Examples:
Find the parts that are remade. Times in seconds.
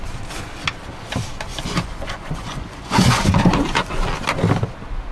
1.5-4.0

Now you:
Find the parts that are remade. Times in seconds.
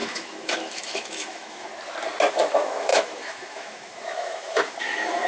0.0-1.7; 2.3-5.3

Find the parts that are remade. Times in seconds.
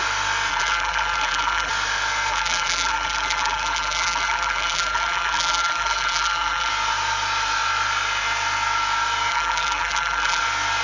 0.5-1.7; 2.3-6.7; 9.3-10.4